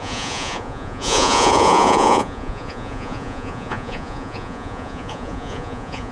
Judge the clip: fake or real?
fake